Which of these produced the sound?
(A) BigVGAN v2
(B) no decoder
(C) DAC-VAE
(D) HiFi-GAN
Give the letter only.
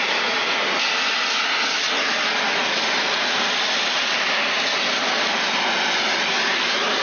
B